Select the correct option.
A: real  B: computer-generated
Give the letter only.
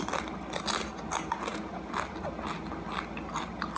A